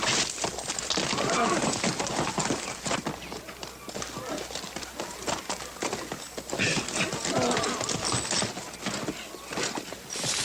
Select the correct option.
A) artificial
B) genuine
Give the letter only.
B